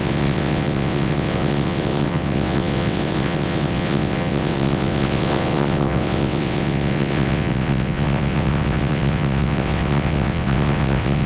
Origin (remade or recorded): remade